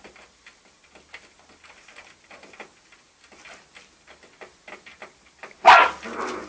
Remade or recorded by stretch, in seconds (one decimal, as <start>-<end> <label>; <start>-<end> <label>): 0.0-6.5 recorded